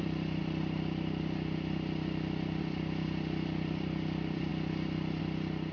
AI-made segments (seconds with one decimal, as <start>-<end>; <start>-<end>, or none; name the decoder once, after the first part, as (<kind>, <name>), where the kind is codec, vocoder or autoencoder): 0.0-0.4 (vocoder, BigVGAN v2); 2.6-4.5; 5.2-5.7